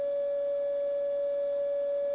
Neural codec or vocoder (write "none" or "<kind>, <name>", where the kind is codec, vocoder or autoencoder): none